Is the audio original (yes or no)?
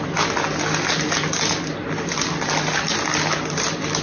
yes